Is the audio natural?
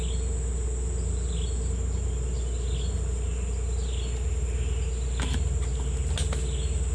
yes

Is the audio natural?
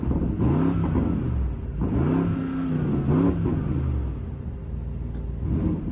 yes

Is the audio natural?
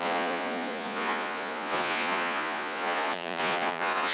no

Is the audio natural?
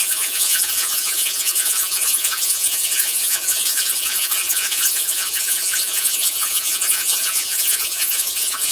no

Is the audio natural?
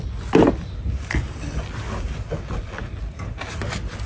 yes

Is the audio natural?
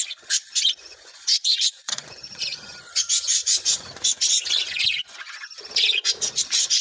no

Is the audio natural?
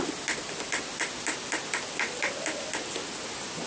yes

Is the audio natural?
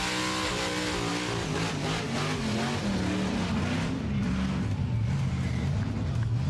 yes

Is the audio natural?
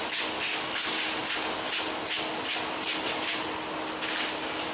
yes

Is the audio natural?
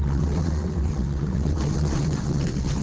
no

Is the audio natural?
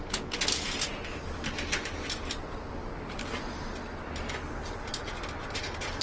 yes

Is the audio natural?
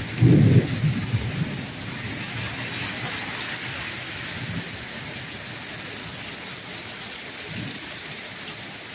yes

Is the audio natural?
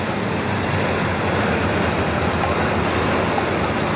yes